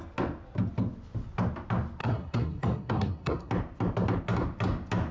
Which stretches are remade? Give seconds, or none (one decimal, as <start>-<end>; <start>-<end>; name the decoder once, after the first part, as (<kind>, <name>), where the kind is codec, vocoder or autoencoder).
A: 2.0-3.5 (codec, SNAC)